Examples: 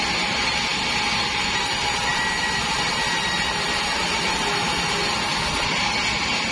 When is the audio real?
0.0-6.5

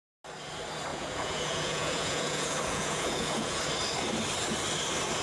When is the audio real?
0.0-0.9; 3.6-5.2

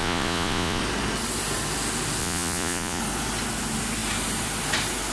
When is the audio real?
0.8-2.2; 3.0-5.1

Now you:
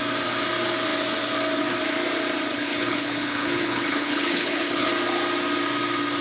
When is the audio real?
0.0-2.5; 4.9-6.2

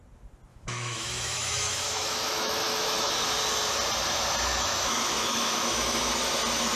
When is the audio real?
0.0-0.5; 3.1-4.5; 6.1-6.8

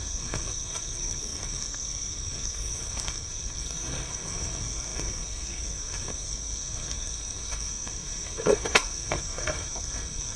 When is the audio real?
none

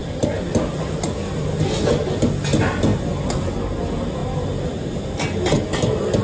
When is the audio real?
0.0-6.2